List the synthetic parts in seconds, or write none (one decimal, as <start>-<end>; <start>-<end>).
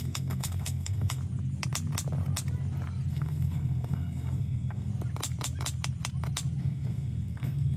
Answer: 0.0-1.2; 3.1-4.9; 6.6-7.8